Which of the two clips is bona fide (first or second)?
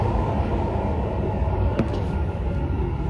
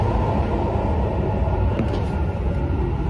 second